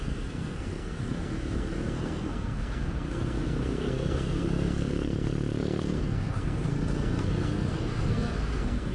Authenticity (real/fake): fake